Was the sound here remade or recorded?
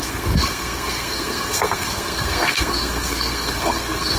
remade